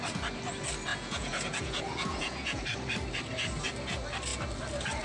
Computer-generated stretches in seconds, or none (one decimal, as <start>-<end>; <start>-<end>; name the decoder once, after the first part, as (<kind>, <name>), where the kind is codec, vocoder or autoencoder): 0.9-2.6 (vocoder, Vocos)